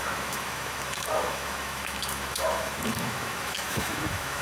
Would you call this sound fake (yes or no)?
yes